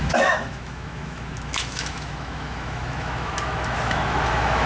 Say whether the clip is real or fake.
fake